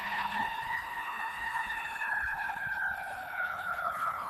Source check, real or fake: fake